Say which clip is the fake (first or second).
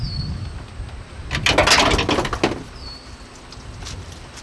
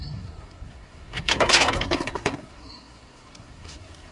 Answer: second